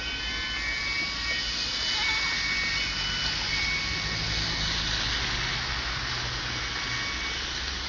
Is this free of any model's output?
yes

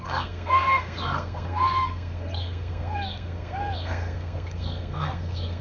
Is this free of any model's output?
no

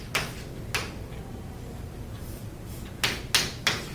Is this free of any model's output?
yes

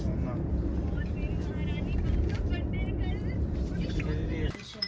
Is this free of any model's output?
yes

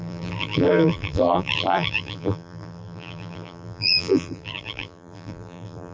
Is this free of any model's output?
no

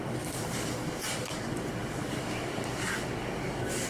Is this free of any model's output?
no